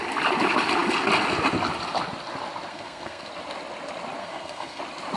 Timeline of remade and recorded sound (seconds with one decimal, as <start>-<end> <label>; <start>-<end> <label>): 0.0-2.7 recorded; 2.7-3.3 remade; 3.3-4.2 recorded; 4.2-4.8 remade; 4.8-5.2 recorded